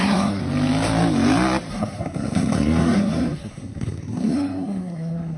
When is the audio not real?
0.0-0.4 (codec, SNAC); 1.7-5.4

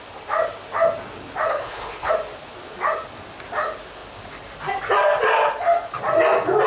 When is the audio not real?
1.5-2.1 (codec, HILCodec)

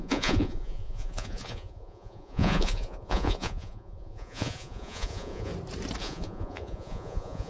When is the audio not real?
0.0-5.5 (vocoder, Vocos); 6.0-7.5

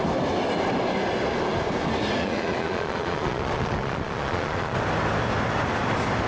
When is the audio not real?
2.2-4.8 (vocoder, Vocos)

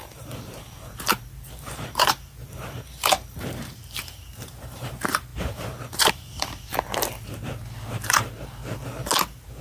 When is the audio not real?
0.0-6.7 (vocoder, BigVGAN v2); 7.9-8.6

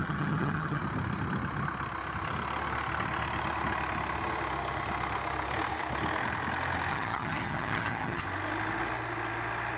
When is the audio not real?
0.0-0.8 (vocoder, HiFi-GAN); 6.9-8.2

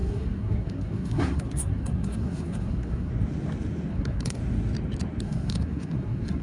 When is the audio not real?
0.0-3.1 (codec, SNAC); 3.9-4.4; 5.2-6.4